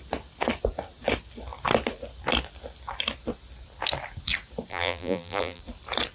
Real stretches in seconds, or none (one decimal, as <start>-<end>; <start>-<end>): 0.0-4.7; 5.6-6.1